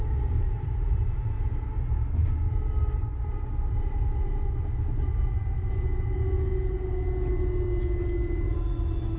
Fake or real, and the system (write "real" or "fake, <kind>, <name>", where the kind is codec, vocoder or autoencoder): real